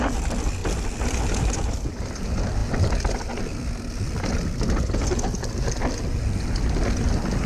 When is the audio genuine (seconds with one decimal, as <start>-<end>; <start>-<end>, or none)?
0.0-7.5